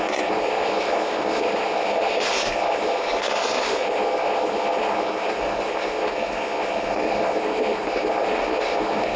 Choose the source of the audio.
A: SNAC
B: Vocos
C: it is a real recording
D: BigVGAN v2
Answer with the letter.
A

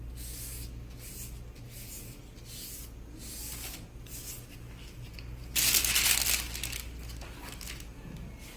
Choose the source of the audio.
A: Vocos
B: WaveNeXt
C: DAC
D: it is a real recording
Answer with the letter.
D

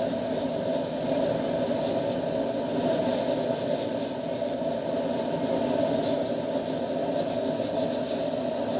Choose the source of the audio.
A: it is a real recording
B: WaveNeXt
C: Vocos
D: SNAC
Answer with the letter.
A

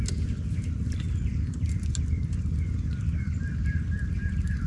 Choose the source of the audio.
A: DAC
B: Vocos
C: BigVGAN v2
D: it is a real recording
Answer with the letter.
D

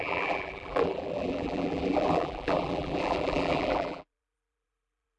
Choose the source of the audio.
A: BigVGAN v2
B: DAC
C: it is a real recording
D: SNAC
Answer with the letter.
A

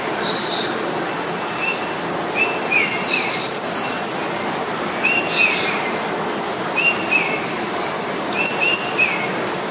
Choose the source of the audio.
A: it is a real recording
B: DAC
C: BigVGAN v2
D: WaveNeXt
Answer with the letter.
A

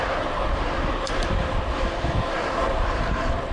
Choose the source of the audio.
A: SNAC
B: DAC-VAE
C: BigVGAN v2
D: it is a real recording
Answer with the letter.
C